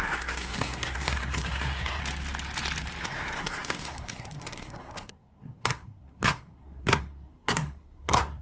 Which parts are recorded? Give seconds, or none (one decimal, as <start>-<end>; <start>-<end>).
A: 2.0-3.0